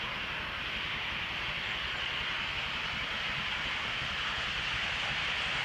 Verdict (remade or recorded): recorded